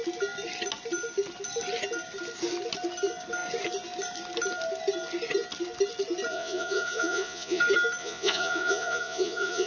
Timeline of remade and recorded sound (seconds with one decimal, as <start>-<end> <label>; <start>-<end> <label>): 0.0-6.3 recorded; 6.3-7.6 remade; 7.6-8.0 recorded; 8.0-9.7 remade